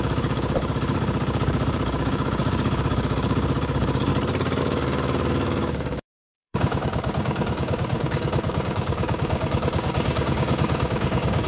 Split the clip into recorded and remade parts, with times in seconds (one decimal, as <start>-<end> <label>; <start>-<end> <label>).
0.0-4.1 remade; 4.1-4.6 recorded; 4.6-11.5 remade